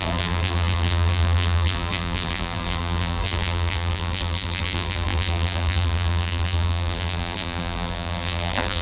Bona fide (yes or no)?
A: no